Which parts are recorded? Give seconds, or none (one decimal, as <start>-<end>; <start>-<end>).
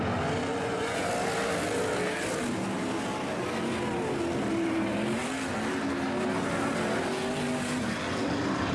0.0-0.5; 1.1-8.7